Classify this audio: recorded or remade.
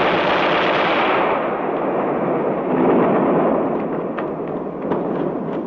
recorded